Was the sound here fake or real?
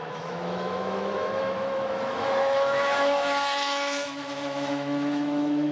fake